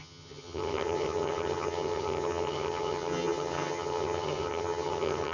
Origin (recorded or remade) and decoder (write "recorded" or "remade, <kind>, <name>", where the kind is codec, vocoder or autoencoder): remade, vocoder, HiFi-GAN